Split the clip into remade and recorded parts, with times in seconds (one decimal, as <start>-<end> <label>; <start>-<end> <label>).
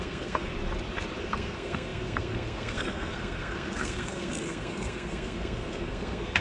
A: 0.0-0.5 remade; 0.5-1.2 recorded; 1.2-6.4 remade